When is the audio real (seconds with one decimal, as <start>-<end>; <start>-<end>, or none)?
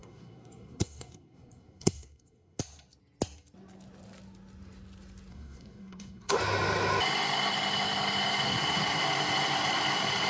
2.6-5.3; 6.3-10.3